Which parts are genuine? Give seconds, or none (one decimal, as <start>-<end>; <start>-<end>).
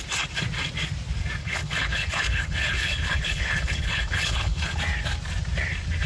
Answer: 0.0-1.4; 4.8-6.1